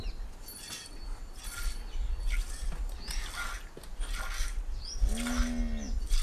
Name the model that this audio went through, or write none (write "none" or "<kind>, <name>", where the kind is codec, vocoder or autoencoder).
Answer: none